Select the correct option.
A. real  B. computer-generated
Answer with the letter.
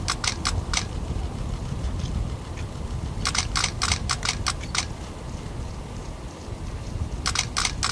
A